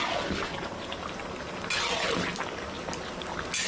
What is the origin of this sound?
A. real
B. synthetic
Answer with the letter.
A